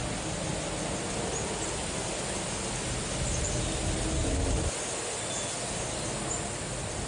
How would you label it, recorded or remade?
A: recorded